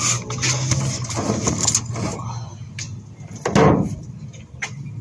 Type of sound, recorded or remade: recorded